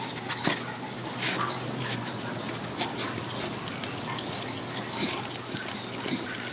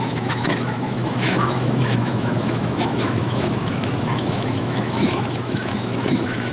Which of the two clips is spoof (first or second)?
second